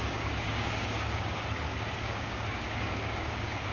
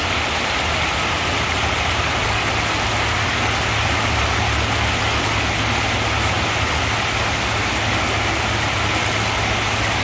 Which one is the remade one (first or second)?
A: first